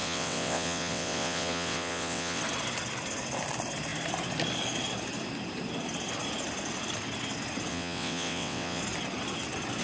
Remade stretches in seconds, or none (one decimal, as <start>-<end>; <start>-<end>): 0.0-2.4; 7.7-8.8